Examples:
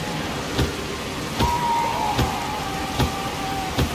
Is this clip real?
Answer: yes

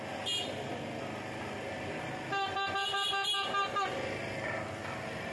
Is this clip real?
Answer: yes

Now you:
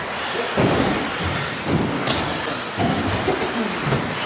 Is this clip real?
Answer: yes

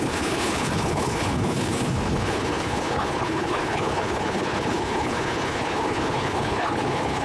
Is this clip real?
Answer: no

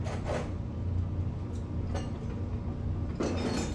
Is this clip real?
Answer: yes